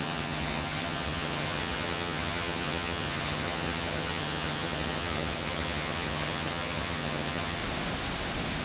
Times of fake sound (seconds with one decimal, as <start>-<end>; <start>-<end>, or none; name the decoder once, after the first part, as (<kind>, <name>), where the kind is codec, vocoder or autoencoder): 0.0-7.6 (vocoder, HiFi-GAN)